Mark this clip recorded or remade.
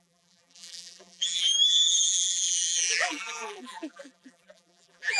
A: remade